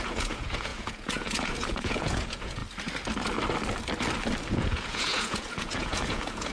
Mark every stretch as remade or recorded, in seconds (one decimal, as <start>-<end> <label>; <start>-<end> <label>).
0.0-2.6 remade; 2.6-4.5 recorded; 4.5-6.5 remade